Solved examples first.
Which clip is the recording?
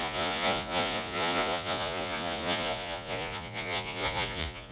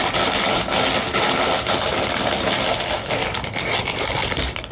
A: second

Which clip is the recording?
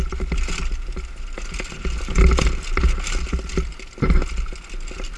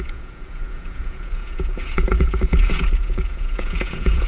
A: first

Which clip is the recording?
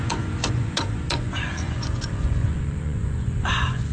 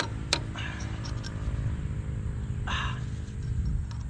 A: second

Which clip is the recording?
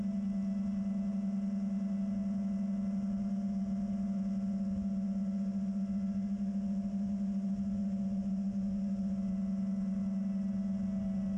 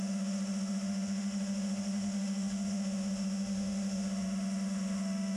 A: first